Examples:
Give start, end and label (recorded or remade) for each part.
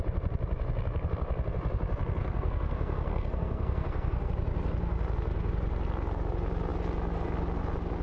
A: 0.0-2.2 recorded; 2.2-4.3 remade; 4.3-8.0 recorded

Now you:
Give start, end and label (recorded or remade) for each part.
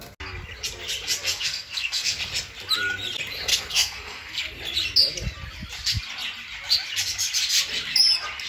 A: 0.0-1.3 recorded; 1.3-2.2 remade; 2.2-3.5 recorded; 3.5-4.4 remade; 4.4-8.5 recorded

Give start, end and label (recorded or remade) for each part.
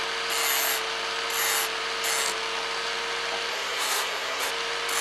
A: 0.0-3.5 recorded; 3.5-4.5 remade; 4.5-5.0 recorded